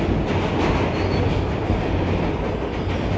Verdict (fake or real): real